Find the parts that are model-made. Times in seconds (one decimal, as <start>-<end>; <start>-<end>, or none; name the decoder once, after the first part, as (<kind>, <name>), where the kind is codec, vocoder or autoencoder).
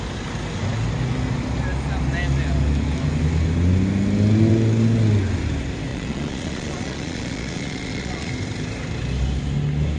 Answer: 5.9-8.3 (vocoder, Vocos)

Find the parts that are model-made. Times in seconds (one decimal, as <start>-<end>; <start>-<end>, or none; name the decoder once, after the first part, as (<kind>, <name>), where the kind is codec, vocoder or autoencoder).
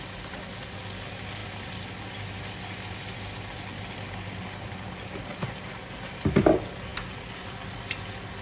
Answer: none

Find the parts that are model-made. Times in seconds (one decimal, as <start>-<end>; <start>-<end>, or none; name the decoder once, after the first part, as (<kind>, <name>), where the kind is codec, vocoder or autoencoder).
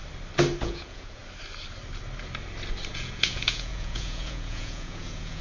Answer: 0.6-1.2 (vocoder, Vocos); 2.9-5.4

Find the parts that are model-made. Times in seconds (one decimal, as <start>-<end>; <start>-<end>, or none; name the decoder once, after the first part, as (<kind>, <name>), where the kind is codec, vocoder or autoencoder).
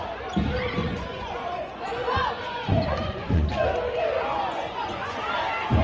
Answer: 0.8-3.5 (vocoder, Vocos); 4.4-5.2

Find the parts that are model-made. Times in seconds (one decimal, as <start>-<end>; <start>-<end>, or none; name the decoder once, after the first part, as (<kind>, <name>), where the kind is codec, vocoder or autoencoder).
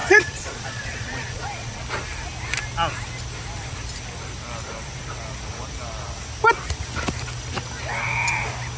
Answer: 0.0-1.8 (vocoder, Vocos)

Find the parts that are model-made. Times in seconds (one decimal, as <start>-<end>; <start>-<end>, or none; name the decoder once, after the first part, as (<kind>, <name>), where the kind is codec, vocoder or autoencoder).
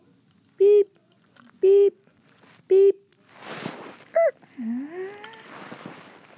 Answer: 1.0-2.4 (vocoder, Vocos)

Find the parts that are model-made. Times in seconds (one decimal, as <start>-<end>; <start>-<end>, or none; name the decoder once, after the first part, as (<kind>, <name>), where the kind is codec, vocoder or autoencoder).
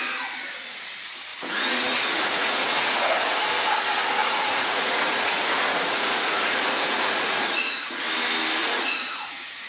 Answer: 1.3-3.5 (vocoder, Vocos); 4.2-7.9; 8.6-9.7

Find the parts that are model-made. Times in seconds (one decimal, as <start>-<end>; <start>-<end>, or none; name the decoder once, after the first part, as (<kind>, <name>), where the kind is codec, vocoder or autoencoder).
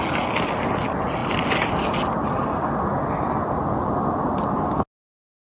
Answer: none